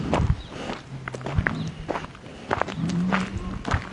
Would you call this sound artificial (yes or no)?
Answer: no